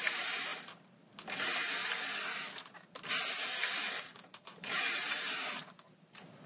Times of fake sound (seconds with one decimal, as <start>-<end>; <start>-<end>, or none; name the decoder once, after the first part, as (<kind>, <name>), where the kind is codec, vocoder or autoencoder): 0.0-0.5 (vocoder, BigVGAN v2); 1.4-1.8; 3.3-6.5